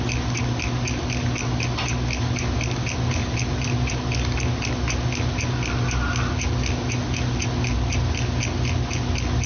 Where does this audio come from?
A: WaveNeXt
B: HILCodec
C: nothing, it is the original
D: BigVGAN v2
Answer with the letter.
C